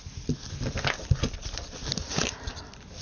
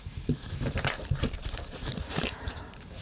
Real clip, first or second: first